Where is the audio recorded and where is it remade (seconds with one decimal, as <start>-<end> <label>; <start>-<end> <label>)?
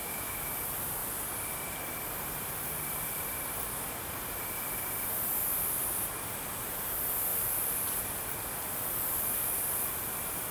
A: 0.0-0.5 remade; 0.5-10.5 recorded